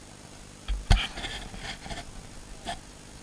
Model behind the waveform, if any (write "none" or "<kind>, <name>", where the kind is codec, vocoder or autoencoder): none